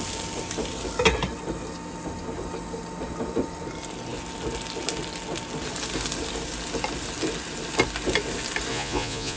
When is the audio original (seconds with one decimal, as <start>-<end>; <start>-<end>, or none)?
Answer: 0.0-8.7